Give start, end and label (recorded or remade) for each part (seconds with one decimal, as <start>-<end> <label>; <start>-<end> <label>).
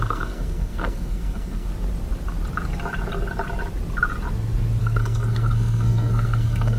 0.0-1.7 remade; 1.7-4.8 recorded; 4.8-6.8 remade